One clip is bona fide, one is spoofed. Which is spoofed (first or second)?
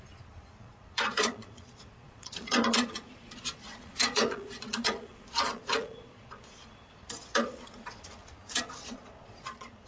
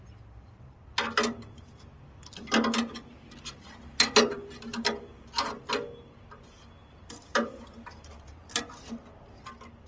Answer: first